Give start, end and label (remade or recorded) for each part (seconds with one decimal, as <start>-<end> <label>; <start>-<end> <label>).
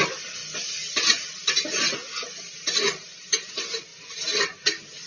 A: 0.0-5.1 recorded